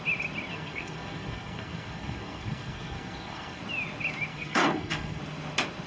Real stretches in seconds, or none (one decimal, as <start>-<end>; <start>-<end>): 0.0-0.5; 3.6-4.3; 5.2-5.9